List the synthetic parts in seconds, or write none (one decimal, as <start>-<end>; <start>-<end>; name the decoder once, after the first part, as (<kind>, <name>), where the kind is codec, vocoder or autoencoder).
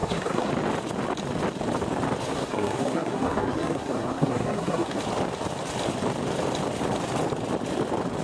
0.0-0.5 (codec, SNAC); 2.3-5.0